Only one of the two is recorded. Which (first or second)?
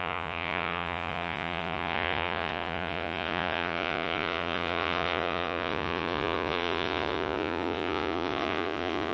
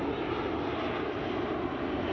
second